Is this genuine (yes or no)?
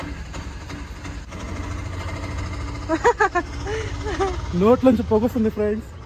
yes